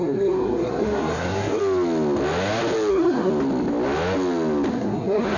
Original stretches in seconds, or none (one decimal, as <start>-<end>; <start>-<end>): 1.6-2.9; 3.3-4.7